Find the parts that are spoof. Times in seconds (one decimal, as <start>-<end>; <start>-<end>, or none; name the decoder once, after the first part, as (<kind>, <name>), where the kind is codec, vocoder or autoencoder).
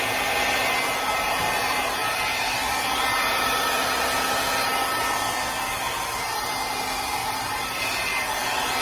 7.2-7.8 (vocoder, BigVGAN v2)